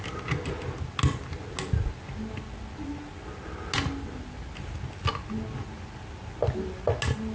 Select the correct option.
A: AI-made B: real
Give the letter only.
B